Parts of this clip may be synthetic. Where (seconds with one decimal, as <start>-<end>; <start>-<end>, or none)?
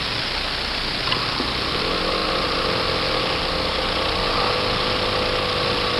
none